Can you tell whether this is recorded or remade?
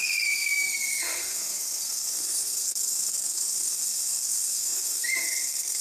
remade